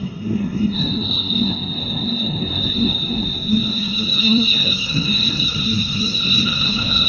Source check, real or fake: fake